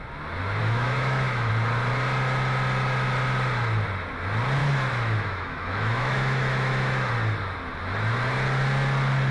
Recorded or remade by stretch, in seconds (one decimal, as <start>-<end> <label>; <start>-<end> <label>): 0.0-0.6 recorded; 0.6-1.5 remade; 1.5-4.6 recorded; 4.6-7.1 remade; 7.1-9.3 recorded